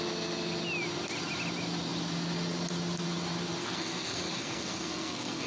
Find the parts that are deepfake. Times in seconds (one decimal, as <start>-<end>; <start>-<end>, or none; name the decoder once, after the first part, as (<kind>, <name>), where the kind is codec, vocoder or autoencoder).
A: 3.6-5.5 (codec, SNAC)